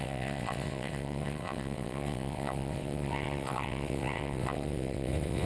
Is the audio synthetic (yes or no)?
yes